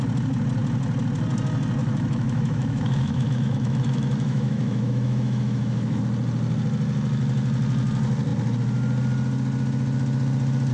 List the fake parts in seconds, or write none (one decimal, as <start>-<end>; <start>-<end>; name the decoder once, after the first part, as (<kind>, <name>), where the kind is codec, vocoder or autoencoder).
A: 1.8-6.0 (autoencoder, DAC-VAE)